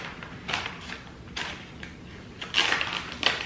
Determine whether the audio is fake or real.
real